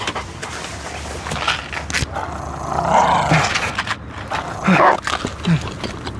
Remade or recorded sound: recorded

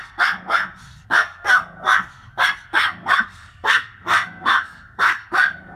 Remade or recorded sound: remade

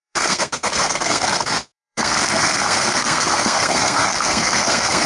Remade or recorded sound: remade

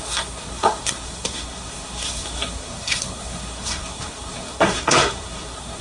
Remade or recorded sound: remade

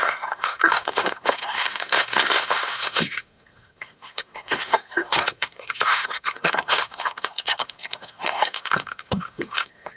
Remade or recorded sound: remade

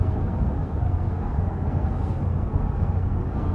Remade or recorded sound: remade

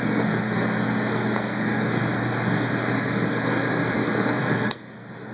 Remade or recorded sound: remade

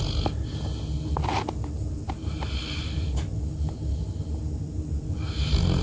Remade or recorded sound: recorded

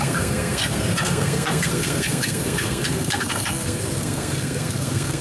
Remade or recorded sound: remade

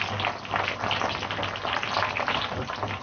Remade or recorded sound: recorded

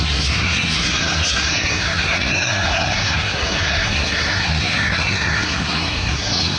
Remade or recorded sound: remade